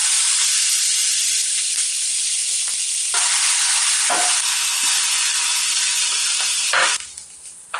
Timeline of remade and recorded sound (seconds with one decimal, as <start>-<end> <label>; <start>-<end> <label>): 0.0-7.8 recorded